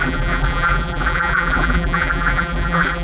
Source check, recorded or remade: remade